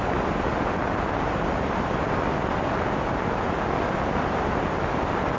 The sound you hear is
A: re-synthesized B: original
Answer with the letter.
B